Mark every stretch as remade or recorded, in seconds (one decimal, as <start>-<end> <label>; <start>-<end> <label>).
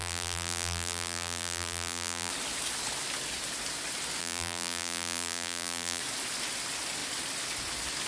0.0-2.3 remade; 2.3-4.2 recorded; 4.2-6.0 remade; 6.0-8.1 recorded